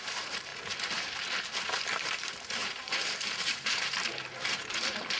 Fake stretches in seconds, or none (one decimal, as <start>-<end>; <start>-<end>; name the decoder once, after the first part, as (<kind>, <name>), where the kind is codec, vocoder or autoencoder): 0.0-0.5 (vocoder, BigVGAN v2); 1.9-5.2